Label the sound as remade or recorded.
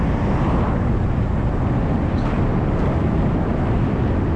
recorded